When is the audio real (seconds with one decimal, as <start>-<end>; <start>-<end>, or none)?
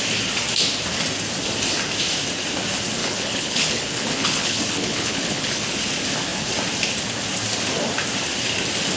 0.0-3.0; 5.6-9.0